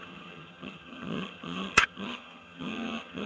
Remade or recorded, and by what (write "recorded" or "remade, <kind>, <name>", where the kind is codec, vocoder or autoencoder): remade, vocoder, HiFi-GAN